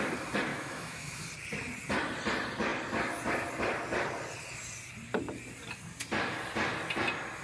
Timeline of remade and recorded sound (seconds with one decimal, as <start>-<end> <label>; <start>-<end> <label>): 0.0-0.5 recorded; 0.5-1.2 remade; 1.2-7.4 recorded